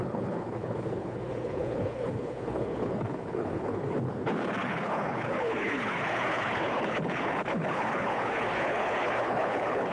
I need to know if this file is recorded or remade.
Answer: remade